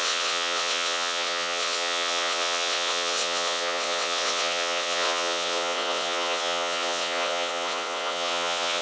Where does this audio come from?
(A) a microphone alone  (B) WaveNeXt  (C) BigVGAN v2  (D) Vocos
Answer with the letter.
B